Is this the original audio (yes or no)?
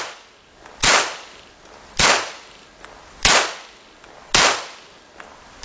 yes